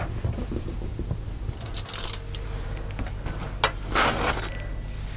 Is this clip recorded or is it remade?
recorded